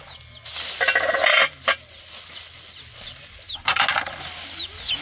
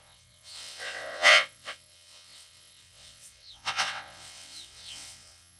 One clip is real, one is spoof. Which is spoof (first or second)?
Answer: second